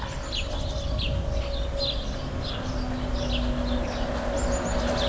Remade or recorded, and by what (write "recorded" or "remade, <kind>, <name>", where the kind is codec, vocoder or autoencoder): recorded